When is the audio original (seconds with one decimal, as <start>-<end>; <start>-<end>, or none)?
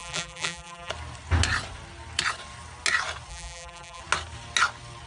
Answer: 0.9-3.3; 4.0-5.1